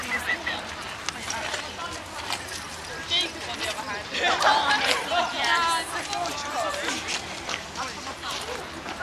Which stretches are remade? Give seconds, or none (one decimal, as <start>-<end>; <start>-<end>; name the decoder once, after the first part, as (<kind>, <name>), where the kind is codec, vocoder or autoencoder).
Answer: none